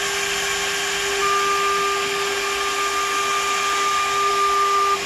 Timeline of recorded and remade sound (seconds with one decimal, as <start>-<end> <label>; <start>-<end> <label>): 0.0-5.1 recorded